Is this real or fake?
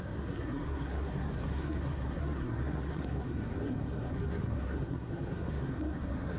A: fake